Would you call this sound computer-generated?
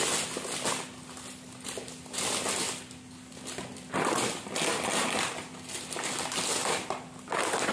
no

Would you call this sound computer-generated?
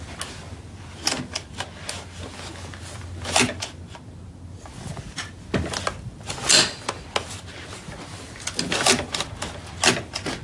no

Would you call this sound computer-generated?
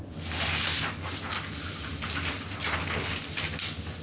no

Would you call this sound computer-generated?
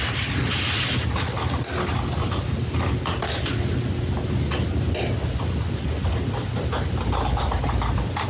no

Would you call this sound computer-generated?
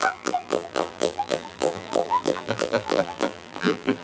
yes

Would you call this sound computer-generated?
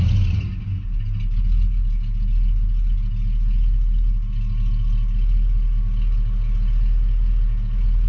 no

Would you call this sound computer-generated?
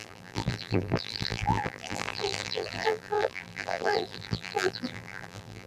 yes